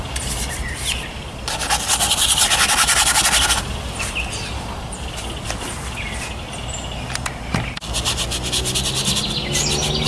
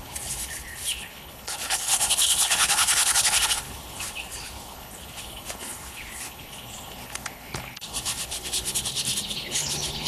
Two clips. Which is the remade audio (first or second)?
second